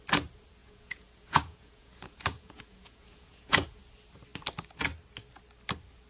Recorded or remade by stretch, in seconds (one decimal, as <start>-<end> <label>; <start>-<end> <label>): 0.0-0.6 recorded; 0.6-3.8 remade; 3.8-6.1 recorded